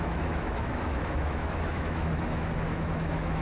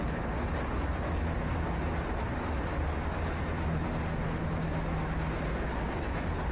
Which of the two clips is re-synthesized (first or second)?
first